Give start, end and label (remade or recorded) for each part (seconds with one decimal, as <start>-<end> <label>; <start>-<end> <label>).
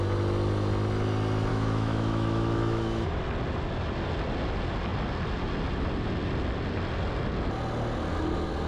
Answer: 0.0-1.5 recorded; 1.5-3.2 remade; 3.2-8.7 recorded